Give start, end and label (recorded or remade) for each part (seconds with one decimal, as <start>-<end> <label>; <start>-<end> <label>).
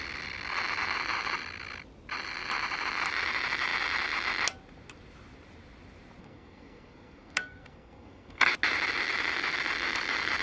0.0-6.2 recorded; 6.2-8.5 remade; 8.5-10.4 recorded